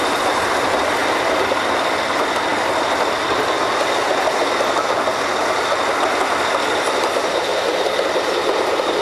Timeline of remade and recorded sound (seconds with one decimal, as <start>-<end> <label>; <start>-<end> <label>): 0.0-1.0 recorded; 1.0-1.9 remade; 1.9-9.0 recorded